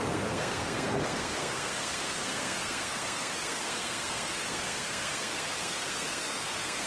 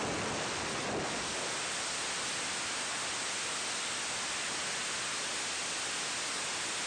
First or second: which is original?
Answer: second